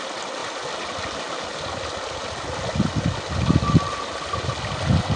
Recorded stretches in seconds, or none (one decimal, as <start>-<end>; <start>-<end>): 0.0-5.2